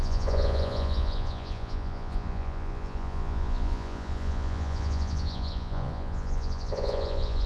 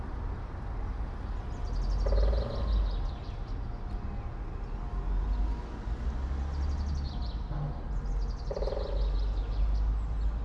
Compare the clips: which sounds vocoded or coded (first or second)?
first